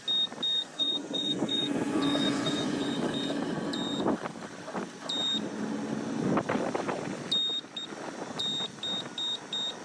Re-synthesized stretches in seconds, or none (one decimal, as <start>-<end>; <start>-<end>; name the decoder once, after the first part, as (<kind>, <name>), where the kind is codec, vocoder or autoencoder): 0.6-2.9 (vocoder, Vocos)